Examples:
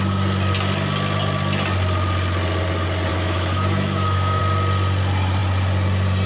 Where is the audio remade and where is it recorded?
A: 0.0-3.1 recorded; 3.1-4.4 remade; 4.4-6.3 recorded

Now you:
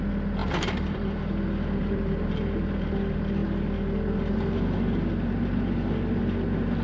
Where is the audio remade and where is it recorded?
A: 0.0-0.4 recorded; 0.4-1.2 remade; 1.2-1.8 recorded; 1.8-2.3 remade; 2.3-6.8 recorded

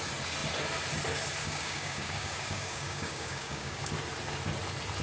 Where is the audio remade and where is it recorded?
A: 0.0-1.4 recorded; 1.4-3.9 remade; 3.9-5.0 recorded

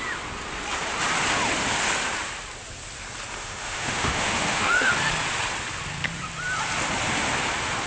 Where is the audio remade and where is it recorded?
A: 0.0-3.3 recorded; 3.3-4.9 remade; 4.9-7.9 recorded